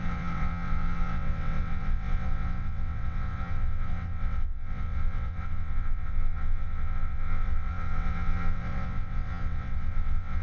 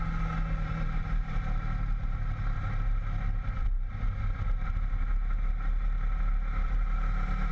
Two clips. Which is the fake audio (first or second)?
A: first